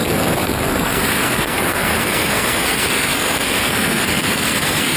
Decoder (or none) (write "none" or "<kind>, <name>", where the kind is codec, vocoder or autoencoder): codec, SNAC